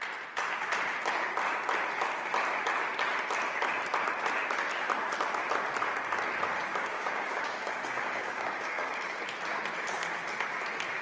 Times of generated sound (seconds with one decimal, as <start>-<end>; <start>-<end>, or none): 6.7-8.9